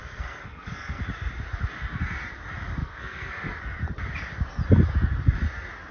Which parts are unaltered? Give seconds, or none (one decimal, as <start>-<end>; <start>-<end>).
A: 1.0-2.8; 3.6-5.9